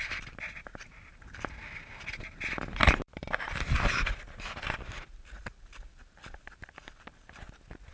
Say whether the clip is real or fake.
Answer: fake